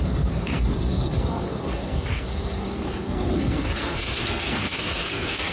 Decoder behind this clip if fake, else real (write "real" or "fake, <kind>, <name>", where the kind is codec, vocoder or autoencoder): fake, codec, SNAC